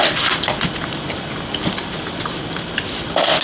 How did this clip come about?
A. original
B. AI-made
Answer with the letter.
A